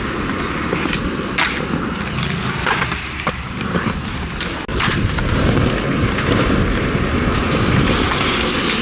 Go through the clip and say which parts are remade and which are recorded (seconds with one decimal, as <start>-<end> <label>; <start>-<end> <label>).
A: 0.0-4.7 recorded; 4.7-6.5 remade; 6.5-8.8 recorded